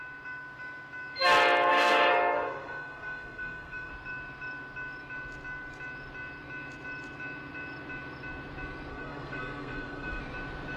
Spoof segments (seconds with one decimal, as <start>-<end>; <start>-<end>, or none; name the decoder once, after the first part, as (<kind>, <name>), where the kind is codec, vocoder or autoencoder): 1.7-3.9 (codec, SNAC); 8.9-10.2